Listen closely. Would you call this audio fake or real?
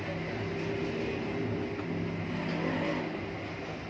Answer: real